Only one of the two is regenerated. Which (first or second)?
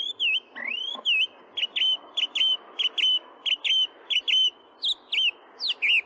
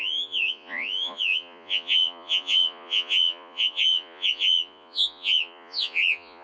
second